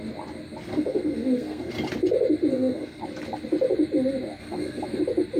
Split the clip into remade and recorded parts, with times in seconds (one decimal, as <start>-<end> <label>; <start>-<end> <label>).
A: 0.0-0.7 recorded; 0.7-1.7 remade; 1.7-2.5 recorded; 2.5-3.0 remade; 3.0-4.4 recorded; 4.4-5.0 remade; 5.0-5.4 recorded